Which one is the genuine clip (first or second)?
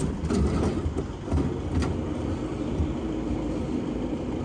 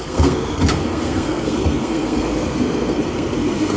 first